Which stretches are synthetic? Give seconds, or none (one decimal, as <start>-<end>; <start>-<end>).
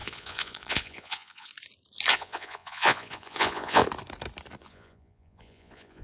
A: 0.0-1.5; 2.1-3.8; 4.6-6.0